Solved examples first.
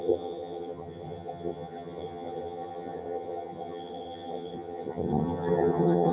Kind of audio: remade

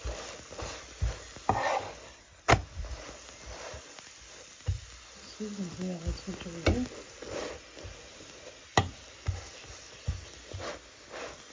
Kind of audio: recorded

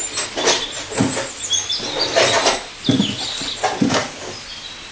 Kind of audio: recorded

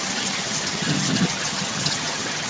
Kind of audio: remade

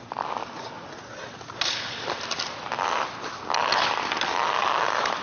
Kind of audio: recorded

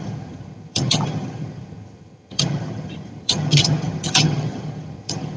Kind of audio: remade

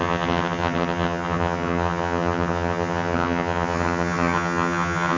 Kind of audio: remade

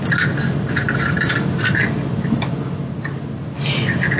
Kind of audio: recorded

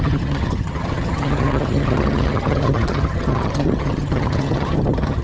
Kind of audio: remade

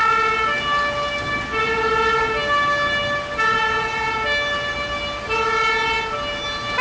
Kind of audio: recorded